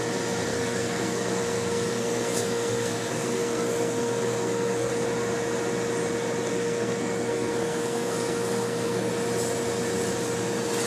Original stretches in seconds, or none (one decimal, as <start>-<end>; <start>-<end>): 0.0-0.5; 4.9-6.5; 9.1-10.9